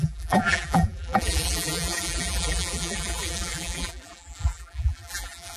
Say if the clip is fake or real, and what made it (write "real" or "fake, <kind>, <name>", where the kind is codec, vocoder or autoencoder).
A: fake, vocoder, BigVGAN v2